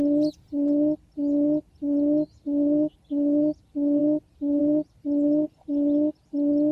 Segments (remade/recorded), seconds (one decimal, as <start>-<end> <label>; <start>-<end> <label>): 0.0-6.7 recorded